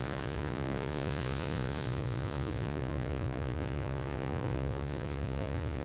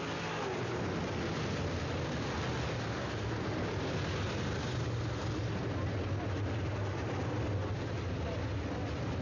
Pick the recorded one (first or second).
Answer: second